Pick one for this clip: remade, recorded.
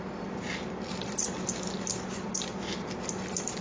recorded